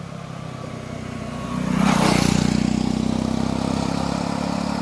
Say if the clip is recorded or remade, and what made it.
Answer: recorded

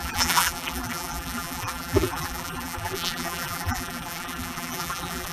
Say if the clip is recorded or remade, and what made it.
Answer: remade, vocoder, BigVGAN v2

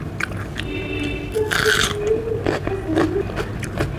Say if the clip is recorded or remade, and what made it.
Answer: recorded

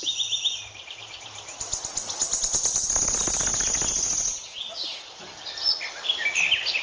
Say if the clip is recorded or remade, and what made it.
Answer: recorded